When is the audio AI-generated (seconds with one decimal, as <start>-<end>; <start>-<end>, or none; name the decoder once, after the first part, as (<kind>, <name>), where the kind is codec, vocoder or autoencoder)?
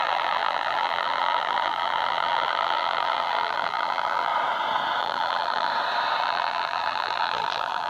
0.0-4.3 (vocoder, BigVGAN v2); 5.0-5.7; 6.2-7.9